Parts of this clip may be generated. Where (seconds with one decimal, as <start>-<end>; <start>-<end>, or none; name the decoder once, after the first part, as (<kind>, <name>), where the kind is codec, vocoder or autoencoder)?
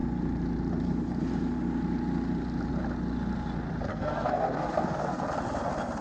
3.9-5.2 (codec, SNAC)